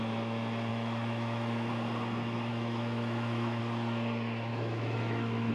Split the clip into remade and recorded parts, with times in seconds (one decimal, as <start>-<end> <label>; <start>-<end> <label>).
0.0-0.7 recorded; 0.7-1.7 remade; 1.7-2.5 recorded; 2.5-3.6 remade; 3.6-4.5 recorded; 4.5-5.5 remade